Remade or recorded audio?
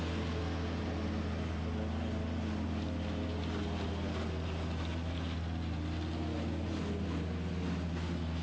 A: recorded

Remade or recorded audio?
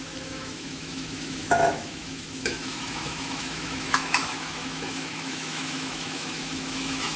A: remade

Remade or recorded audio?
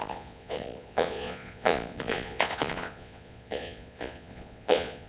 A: remade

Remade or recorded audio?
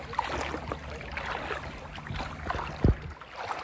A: recorded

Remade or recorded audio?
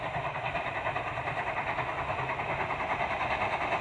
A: recorded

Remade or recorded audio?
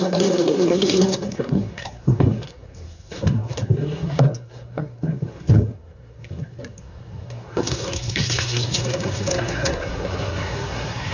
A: remade